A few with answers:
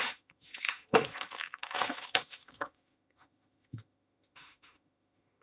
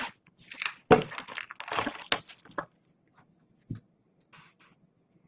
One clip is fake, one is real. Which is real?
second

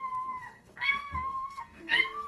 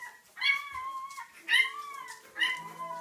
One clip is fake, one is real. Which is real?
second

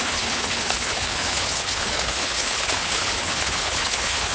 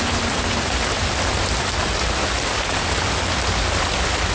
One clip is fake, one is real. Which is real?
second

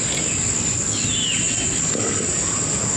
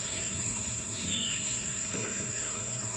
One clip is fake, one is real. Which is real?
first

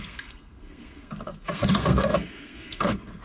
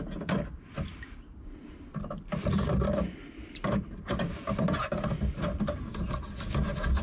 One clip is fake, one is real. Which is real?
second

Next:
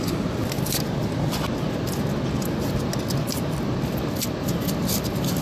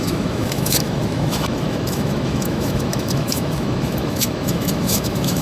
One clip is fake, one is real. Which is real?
first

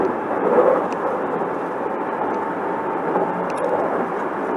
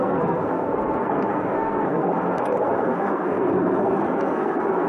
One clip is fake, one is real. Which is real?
first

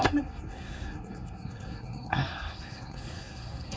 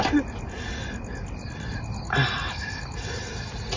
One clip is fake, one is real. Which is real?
second